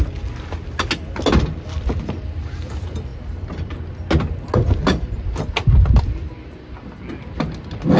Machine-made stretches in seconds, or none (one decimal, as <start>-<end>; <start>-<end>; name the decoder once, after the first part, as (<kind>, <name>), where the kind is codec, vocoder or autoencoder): 3.1-3.7 (vocoder, BigVGAN v2)